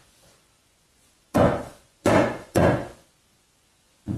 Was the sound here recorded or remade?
remade